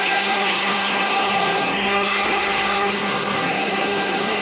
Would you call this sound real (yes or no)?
no